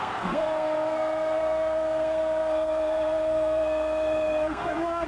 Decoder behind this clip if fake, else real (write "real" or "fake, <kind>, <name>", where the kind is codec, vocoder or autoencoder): fake, codec, SNAC